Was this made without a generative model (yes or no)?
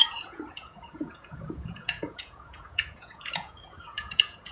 no